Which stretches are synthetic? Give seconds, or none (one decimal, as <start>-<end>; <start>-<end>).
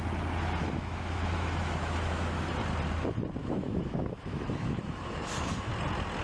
0.6-2.5; 3.4-5.7